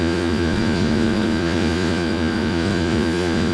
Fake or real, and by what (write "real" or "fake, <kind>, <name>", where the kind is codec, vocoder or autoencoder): fake, vocoder, Vocos